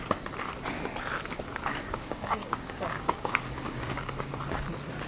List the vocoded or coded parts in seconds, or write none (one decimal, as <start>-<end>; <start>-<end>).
1.7-4.3